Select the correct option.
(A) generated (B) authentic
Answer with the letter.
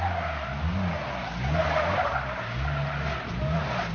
B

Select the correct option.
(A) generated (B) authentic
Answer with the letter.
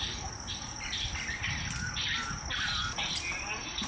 B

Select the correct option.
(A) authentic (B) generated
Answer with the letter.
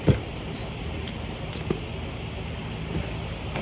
A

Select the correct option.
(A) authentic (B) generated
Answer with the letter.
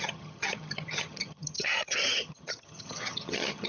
B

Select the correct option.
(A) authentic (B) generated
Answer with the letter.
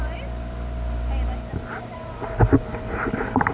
A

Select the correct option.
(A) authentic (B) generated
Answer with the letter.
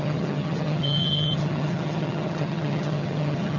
B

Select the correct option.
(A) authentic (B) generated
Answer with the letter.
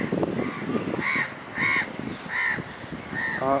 A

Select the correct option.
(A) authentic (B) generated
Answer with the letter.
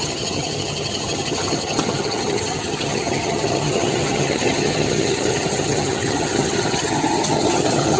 B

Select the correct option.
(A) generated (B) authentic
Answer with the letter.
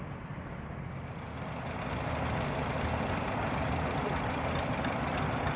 B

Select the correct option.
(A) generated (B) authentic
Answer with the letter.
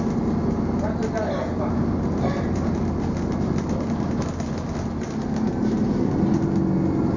B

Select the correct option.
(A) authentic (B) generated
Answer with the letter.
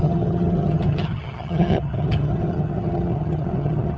B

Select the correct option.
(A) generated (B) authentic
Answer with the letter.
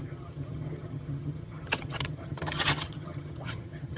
A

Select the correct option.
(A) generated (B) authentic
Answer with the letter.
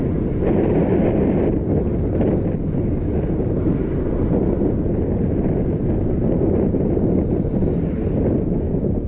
B